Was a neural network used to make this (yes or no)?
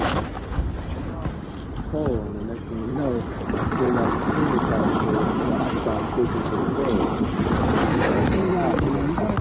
no